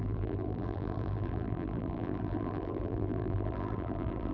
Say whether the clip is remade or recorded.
remade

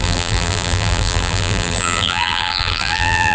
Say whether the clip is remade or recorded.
remade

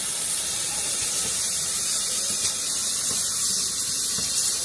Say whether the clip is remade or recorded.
recorded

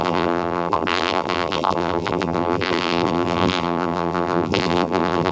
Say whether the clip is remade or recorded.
remade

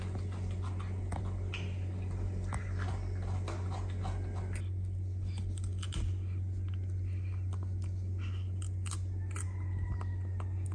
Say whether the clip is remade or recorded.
recorded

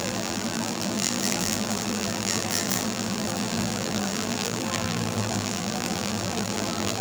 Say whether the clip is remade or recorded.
remade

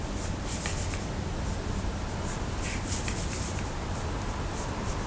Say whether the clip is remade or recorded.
recorded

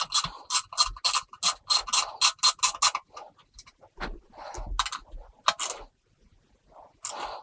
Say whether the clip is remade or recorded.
recorded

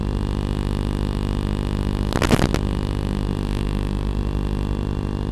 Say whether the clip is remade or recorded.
recorded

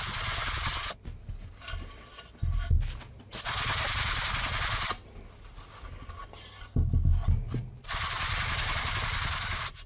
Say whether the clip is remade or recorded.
recorded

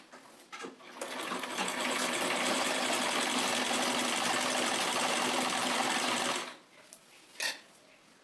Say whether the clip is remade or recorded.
recorded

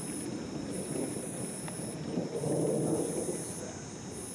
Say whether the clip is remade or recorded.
recorded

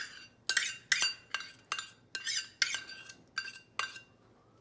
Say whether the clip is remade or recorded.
recorded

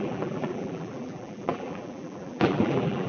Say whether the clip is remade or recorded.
remade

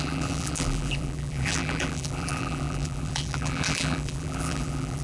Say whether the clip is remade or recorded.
remade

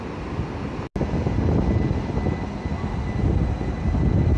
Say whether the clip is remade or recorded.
recorded